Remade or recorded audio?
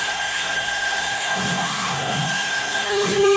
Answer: remade